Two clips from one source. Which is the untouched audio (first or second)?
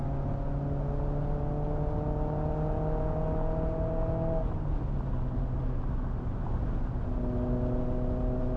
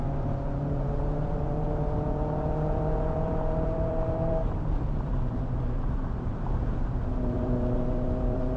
first